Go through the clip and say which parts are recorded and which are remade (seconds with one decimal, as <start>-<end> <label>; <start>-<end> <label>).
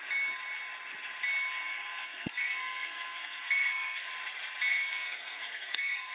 0.0-1.6 recorded; 1.6-4.1 remade; 4.1-4.7 recorded; 4.7-6.1 remade